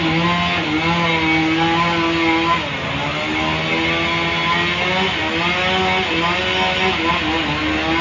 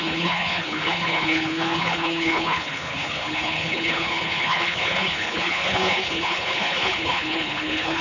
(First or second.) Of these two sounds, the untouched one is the first